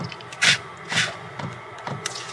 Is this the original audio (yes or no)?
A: no